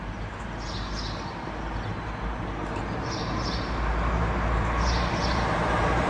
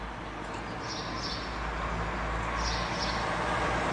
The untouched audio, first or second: second